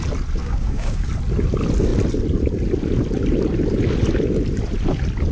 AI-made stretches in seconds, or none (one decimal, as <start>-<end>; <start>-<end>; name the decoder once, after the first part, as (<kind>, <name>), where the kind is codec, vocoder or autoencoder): 0.4-1.1 (codec, DAC)